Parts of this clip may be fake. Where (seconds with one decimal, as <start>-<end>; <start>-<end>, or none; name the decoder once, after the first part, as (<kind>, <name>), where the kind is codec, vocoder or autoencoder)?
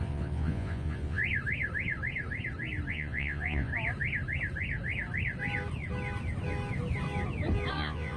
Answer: 0.0-1.2 (vocoder, Vocos); 2.9-3.7; 7.7-8.2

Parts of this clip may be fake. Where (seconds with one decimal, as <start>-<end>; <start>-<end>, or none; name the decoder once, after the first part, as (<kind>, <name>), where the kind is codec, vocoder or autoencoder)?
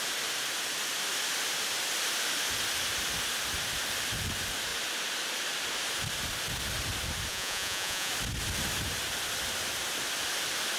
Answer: 7.3-8.1 (vocoder, Vocos)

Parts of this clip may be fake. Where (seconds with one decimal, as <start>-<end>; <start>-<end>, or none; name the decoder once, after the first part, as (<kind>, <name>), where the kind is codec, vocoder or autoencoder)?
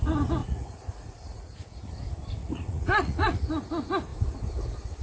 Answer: 0.4-1.9 (vocoder, Vocos); 2.4-3.5